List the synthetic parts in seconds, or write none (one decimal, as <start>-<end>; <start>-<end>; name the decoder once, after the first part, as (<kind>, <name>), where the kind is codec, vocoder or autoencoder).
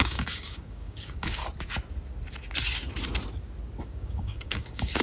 0.0-1.4 (codec, DAC); 3.8-5.0